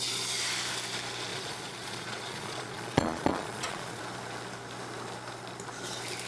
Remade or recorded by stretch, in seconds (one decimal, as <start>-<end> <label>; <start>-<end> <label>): 0.0-1.3 recorded; 1.3-4.0 remade; 4.0-6.3 recorded